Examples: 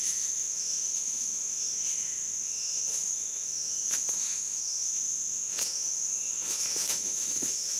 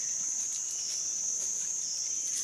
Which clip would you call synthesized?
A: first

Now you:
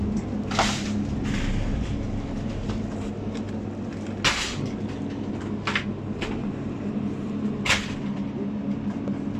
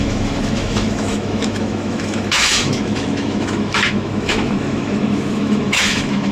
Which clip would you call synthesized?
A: second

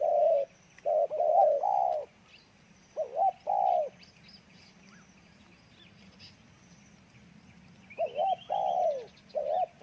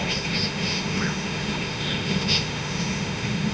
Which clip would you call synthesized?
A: second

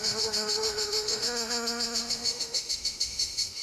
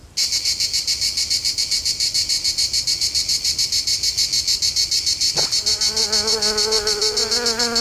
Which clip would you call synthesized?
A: first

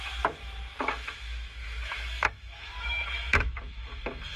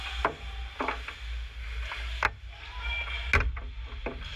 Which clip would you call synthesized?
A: first